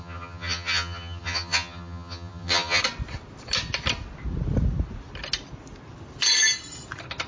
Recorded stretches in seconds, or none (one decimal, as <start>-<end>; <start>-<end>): 2.8-7.3

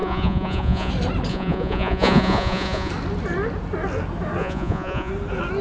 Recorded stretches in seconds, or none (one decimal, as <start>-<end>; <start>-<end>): 0.9-1.3; 2.9-4.4; 5.1-5.6

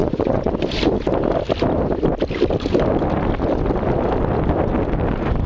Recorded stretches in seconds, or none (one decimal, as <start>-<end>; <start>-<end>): 0.5-5.5

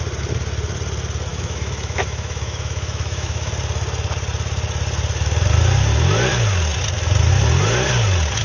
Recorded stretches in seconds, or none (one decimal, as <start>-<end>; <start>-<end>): 0.0-1.3; 3.5-8.4

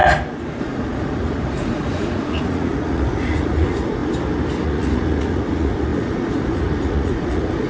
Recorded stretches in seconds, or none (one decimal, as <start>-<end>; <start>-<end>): 0.0-0.6; 4.0-4.6